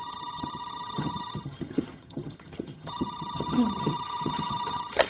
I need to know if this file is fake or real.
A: fake